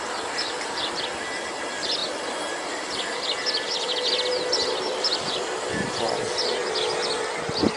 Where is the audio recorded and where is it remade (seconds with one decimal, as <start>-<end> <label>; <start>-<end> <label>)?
0.0-7.8 recorded